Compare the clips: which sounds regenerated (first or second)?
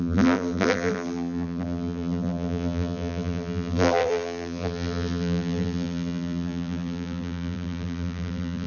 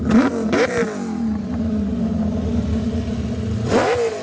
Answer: first